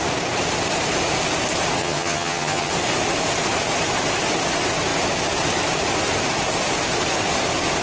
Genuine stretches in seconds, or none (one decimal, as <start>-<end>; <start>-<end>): 0.0-1.8; 2.7-7.8